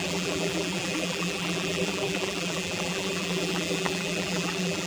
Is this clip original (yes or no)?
no